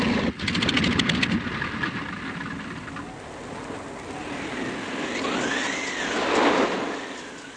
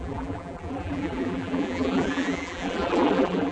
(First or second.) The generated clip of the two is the second